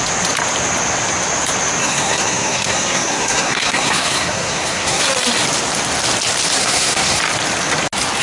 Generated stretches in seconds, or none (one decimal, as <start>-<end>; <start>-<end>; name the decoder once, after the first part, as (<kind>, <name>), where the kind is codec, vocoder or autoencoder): 1.8-5.0 (codec, SNAC); 6.6-7.2